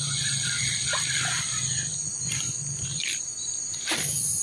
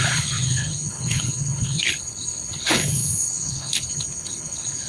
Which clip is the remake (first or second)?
second